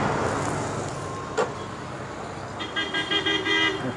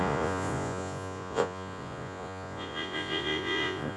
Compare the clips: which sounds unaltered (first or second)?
first